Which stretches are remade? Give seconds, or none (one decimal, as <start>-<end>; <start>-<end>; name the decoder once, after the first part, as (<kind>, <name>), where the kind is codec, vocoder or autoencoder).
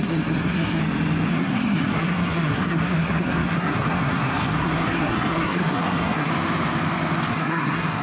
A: 0.0-0.8 (codec, SNAC); 1.3-6.3; 7.3-8.0